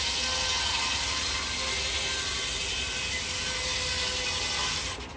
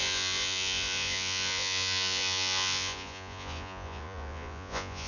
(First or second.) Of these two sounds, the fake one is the second